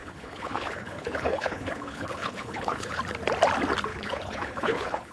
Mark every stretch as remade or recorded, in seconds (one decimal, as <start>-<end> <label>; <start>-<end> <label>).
0.0-3.0 remade; 3.0-3.9 recorded; 3.9-5.1 remade